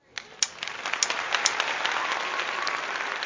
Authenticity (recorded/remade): recorded